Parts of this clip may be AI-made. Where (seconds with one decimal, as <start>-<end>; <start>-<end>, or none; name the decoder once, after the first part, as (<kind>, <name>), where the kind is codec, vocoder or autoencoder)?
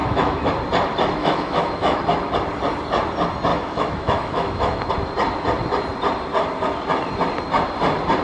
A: 0.0-0.5 (autoencoder, DAC-VAE); 1.2-2.0; 3.5-4.9